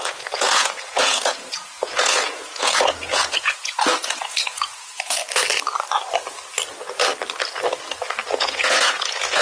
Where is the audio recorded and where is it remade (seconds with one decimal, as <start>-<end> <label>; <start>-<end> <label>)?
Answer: 0.0-5.2 remade; 5.2-8.3 recorded; 8.3-9.4 remade